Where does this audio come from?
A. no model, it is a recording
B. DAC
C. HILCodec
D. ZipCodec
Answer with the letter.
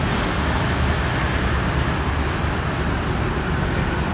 A